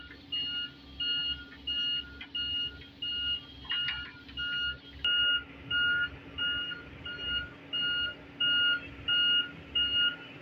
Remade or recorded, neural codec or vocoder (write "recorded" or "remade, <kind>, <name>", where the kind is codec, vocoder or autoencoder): recorded